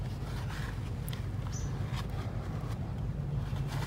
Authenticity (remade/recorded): recorded